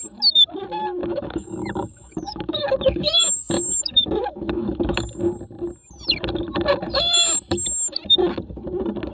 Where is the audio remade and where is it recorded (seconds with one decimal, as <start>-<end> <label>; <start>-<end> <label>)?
0.0-1.0 recorded; 1.0-5.2 remade; 5.2-9.1 recorded